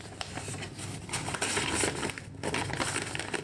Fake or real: real